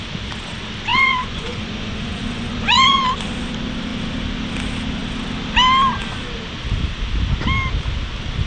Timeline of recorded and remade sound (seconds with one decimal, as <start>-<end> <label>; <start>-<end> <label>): 0.0-0.9 recorded; 0.9-3.0 remade; 3.0-8.5 recorded